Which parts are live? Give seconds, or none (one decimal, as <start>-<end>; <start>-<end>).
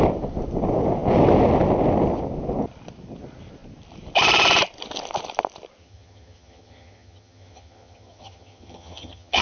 0.0-5.8